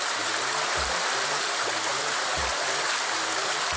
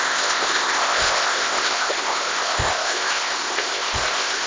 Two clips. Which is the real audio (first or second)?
first